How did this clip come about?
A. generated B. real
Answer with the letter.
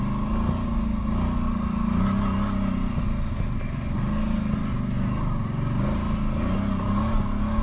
B